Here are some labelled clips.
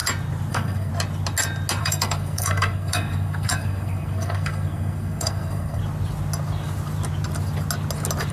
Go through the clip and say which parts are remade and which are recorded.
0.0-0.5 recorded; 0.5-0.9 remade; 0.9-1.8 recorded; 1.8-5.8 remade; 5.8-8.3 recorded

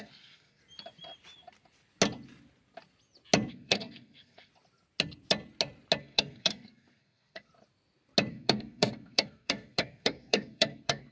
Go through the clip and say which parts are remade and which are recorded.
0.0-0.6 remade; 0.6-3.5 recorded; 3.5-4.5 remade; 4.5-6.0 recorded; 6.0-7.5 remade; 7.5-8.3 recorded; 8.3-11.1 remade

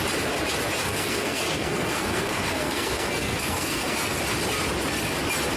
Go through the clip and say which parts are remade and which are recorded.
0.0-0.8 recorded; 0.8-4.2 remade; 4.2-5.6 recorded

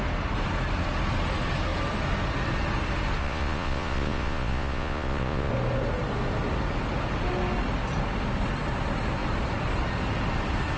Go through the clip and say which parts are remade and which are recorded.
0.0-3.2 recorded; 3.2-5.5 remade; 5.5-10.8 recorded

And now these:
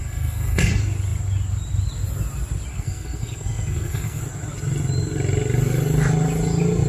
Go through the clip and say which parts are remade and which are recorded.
0.0-0.7 remade; 0.7-2.7 recorded; 2.7-4.2 remade; 4.2-6.9 recorded

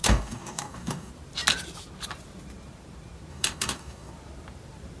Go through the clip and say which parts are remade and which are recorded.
0.0-1.1 remade; 1.1-3.3 recorded; 3.3-4.1 remade; 4.1-5.0 recorded